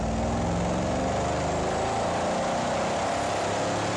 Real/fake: real